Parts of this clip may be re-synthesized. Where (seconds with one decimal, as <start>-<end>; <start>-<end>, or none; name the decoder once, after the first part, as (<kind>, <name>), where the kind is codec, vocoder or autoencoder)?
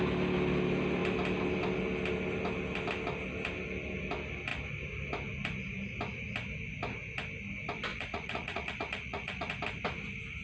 7.9-9.5 (vocoder, Vocos)